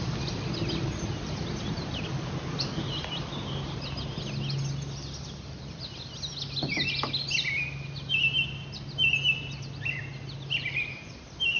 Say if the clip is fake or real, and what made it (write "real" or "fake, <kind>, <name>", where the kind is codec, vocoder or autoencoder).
real